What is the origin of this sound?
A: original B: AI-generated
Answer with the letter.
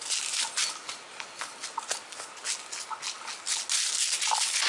A